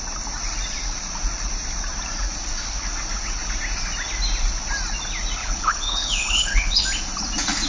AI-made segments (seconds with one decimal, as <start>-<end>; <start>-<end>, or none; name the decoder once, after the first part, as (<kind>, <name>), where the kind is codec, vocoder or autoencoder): 5.4-6.8 (codec, HILCodec)